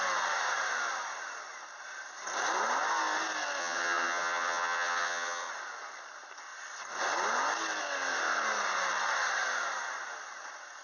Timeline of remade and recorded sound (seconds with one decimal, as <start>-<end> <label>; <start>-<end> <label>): 0.0-3.6 recorded; 3.6-5.5 remade; 5.5-10.8 recorded